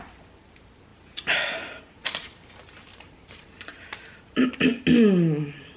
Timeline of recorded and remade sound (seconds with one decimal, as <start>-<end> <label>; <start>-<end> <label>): 0.0-0.9 recorded; 0.9-1.8 remade; 1.8-2.9 recorded; 2.9-4.8 remade; 4.8-5.8 recorded